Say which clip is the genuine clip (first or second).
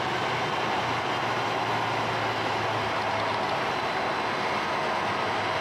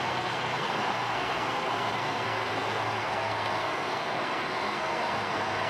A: first